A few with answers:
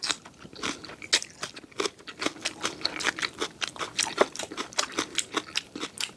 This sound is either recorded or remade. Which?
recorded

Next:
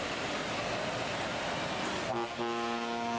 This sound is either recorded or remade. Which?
recorded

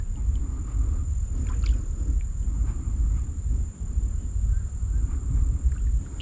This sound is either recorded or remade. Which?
recorded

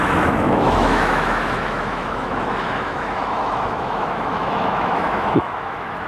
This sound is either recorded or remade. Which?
remade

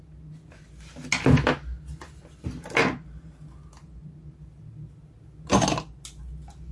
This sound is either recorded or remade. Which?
recorded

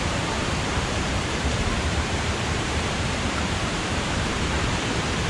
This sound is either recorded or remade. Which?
remade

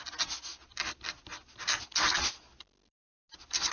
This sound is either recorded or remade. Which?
recorded